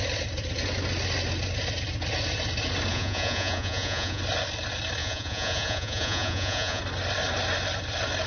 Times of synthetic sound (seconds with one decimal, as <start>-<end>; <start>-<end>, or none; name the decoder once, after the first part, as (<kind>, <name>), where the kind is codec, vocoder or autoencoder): 2.9-4.2 (vocoder, Vocos); 5.0-6.8